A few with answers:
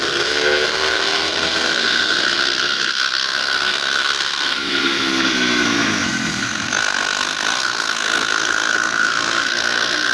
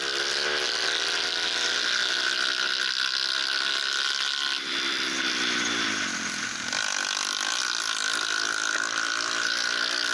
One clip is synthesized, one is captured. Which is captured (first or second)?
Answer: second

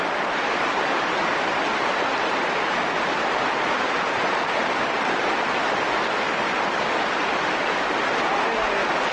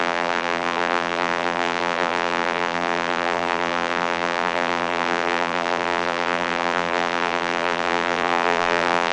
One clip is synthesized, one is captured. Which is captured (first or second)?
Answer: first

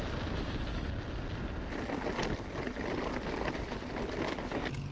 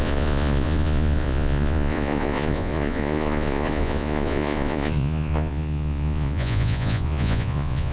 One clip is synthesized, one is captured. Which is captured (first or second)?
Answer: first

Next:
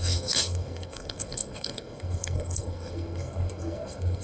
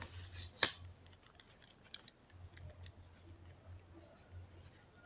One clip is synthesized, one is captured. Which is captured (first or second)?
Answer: second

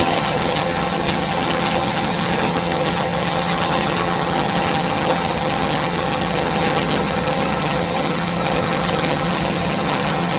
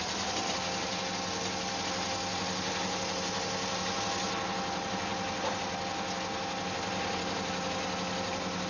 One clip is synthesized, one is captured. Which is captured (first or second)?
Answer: second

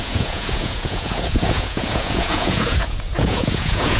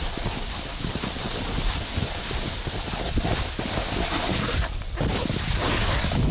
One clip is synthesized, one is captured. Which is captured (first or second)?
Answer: second